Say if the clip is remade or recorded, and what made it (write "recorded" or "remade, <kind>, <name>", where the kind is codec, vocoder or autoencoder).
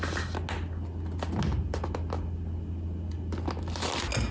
recorded